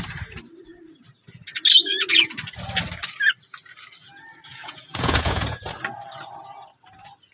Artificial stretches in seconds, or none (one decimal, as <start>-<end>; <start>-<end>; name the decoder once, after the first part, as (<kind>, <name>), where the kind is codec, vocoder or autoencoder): 4.5-5.6 (vocoder, Vocos)